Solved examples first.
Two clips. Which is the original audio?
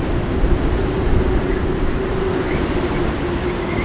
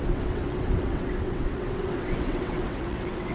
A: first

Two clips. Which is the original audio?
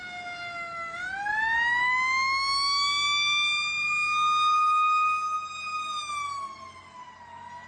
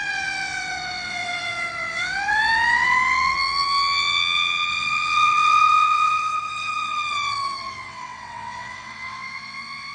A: first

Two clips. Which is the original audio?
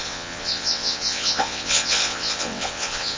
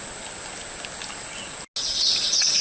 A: second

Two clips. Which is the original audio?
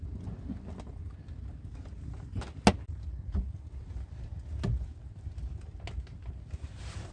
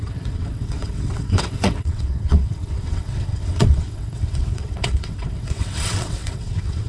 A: first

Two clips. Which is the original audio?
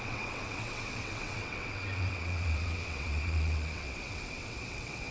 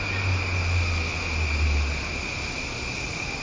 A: second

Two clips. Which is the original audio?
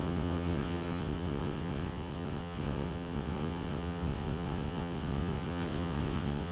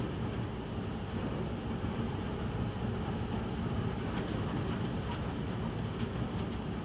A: second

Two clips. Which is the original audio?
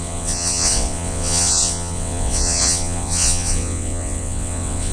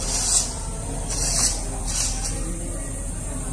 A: second